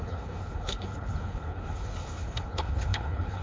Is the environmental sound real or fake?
fake